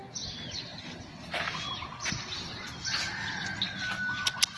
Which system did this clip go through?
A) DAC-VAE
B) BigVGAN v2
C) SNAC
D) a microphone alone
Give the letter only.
D